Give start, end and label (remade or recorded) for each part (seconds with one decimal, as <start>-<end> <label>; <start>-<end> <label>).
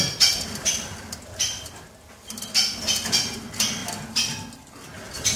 0.0-5.4 recorded